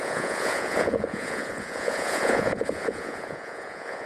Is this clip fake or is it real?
fake